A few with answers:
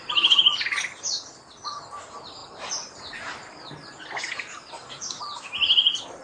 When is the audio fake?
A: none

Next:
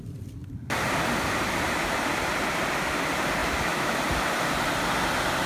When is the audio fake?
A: 3.4-4.0 (autoencoder, DAC-VAE)